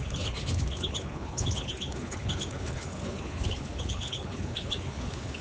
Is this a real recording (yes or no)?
no